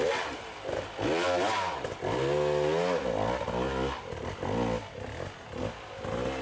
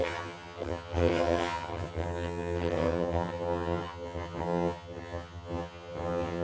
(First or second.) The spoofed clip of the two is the second